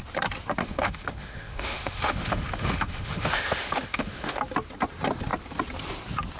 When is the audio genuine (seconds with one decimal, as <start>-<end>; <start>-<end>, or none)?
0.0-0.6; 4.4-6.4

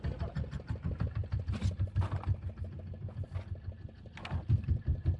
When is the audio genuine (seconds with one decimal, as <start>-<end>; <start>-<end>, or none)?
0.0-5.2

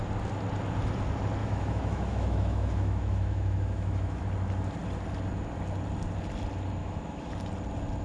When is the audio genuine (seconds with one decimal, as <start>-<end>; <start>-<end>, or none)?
0.0-1.4; 4.2-6.8; 7.3-8.0

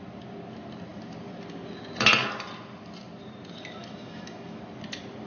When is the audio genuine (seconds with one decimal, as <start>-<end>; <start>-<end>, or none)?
0.0-3.8; 4.6-5.3

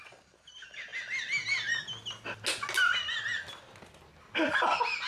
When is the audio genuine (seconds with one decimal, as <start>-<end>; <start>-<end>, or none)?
0.0-5.1

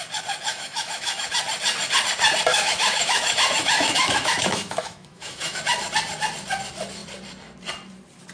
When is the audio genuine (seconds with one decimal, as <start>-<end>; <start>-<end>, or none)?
0.0-0.5; 1.3-2.5; 5.6-8.3

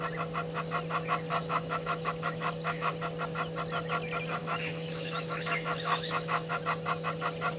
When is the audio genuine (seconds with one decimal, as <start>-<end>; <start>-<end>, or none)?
0.0-1.4; 2.9-4.4; 6.6-7.6

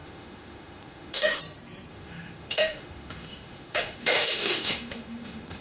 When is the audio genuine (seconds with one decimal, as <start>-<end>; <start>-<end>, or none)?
1.4-1.9